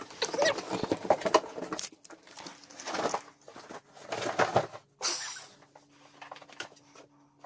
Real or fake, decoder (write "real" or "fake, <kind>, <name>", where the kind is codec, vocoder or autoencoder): real